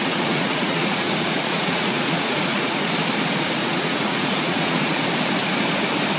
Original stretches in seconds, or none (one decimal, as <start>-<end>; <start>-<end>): 2.8-3.6; 5.0-6.2